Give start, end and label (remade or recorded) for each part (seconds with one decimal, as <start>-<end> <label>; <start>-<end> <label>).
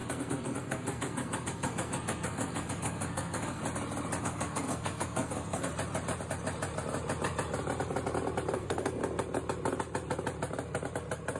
0.0-3.6 remade; 3.6-4.2 recorded; 4.2-5.7 remade; 5.7-8.5 recorded; 8.5-9.0 remade; 9.0-11.4 recorded